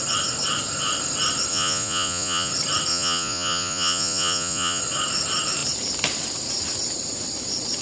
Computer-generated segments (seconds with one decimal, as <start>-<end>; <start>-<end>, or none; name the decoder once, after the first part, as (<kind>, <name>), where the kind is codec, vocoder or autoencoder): 1.5-2.5 (vocoder, Vocos); 2.9-4.8